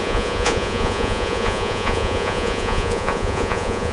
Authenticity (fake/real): fake